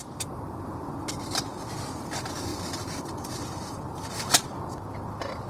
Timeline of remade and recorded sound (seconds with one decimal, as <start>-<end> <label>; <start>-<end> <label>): 0.0-1.8 remade; 1.8-2.5 recorded; 2.5-4.1 remade; 4.1-5.5 recorded